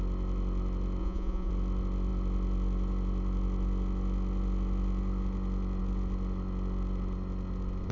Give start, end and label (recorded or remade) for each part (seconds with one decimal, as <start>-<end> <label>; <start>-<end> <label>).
0.0-1.0 recorded; 1.0-1.5 remade; 1.5-7.9 recorded